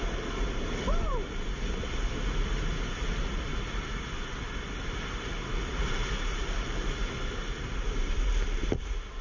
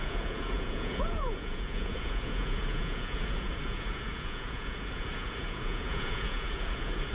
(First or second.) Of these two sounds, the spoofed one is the second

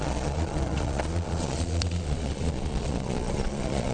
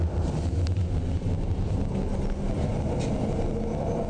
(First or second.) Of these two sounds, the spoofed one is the first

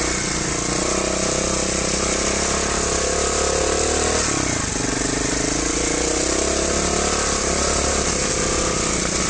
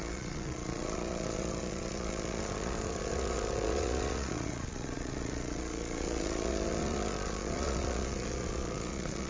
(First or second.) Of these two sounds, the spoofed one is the second